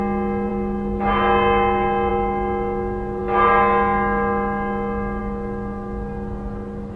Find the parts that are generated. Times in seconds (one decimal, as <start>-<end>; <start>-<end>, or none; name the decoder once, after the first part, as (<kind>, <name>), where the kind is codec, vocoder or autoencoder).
none